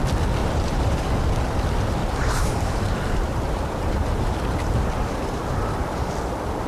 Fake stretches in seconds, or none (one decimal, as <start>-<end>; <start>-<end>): 0.4-1.2; 2.0-6.0